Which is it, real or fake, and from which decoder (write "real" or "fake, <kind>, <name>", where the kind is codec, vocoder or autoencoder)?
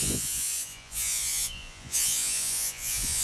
fake, vocoder, Vocos